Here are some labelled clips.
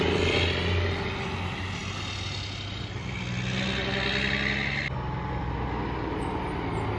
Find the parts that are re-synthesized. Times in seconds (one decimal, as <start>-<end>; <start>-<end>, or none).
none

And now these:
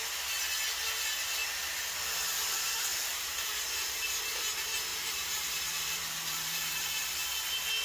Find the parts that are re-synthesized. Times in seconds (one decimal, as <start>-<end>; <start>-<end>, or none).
2.9-4.2; 4.9-7.3

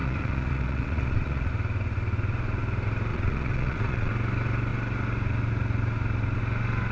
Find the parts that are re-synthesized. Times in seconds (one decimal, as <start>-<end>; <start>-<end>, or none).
0.0-1.5; 3.1-4.1

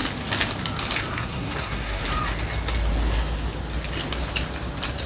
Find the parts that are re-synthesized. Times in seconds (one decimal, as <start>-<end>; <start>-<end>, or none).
1.1-2.0

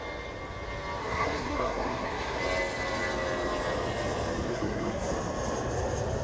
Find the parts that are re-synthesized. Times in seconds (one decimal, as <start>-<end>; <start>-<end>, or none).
1.0-2.4; 4.5-5.1

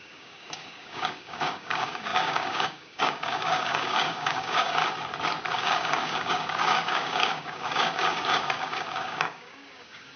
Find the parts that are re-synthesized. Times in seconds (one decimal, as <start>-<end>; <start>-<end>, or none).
0.0-4.8; 5.5-10.2